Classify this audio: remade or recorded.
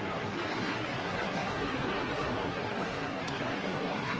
remade